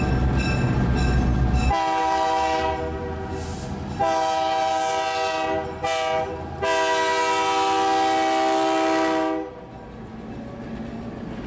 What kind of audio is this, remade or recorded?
recorded